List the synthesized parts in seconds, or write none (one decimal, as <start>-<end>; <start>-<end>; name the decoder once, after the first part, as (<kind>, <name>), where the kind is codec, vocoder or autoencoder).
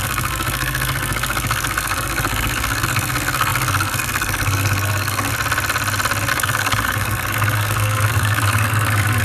0.0-5.3 (codec, SNAC); 6.3-9.2